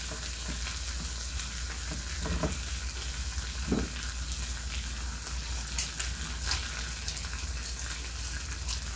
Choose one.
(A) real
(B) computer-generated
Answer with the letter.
A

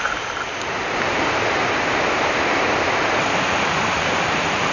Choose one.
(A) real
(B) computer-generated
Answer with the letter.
A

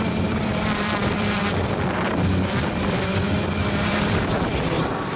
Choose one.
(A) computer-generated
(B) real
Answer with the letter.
A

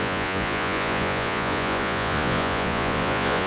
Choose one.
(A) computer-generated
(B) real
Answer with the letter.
A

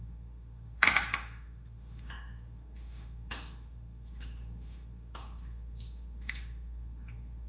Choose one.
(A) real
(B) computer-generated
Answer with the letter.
B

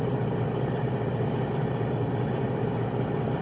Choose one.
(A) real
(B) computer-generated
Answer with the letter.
A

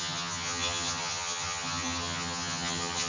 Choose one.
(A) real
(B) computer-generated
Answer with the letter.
B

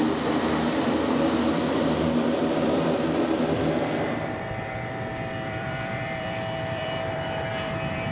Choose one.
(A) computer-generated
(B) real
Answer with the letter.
A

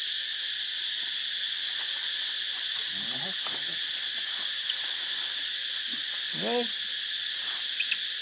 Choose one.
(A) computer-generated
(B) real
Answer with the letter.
B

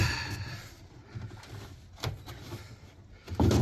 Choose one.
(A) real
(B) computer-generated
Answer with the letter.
A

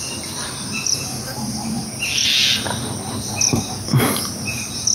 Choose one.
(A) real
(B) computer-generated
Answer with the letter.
A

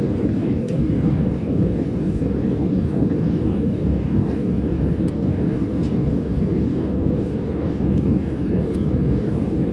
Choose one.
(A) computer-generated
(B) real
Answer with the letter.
A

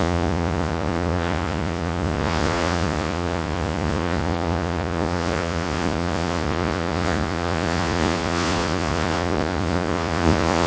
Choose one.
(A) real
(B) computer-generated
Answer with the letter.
B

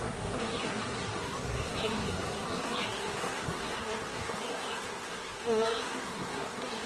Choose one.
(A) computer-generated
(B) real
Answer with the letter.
A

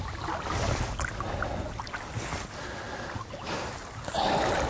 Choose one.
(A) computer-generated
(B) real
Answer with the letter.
B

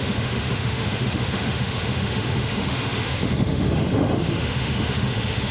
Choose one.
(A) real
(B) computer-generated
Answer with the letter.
B